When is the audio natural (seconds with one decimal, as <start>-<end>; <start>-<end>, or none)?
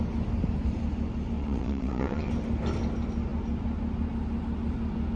0.0-1.4; 2.3-5.2